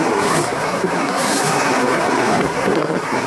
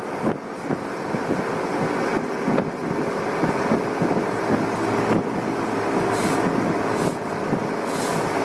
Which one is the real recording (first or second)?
second